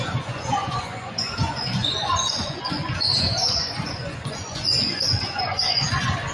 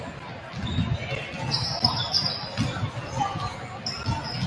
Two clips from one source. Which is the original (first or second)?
second